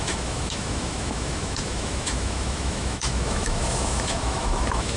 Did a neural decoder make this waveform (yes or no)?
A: yes